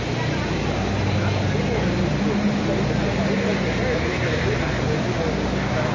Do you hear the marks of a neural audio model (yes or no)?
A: no